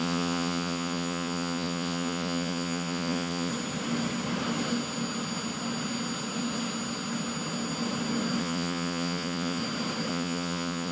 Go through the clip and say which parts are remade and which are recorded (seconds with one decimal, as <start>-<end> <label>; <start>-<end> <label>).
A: 0.0-3.5 remade; 3.5-8.4 recorded; 8.4-9.6 remade; 9.6-10.1 recorded; 10.1-10.9 remade